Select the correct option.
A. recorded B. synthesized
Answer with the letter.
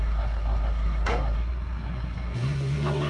B